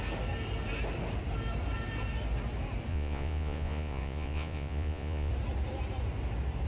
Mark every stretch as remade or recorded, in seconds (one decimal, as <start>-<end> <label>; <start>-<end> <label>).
0.0-2.9 recorded; 2.9-5.3 remade; 5.3-6.7 recorded